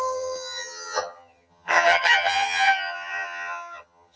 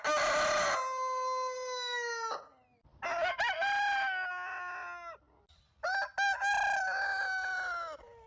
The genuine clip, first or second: second